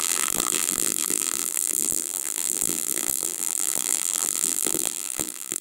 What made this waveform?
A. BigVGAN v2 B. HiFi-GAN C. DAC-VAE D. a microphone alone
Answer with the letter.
A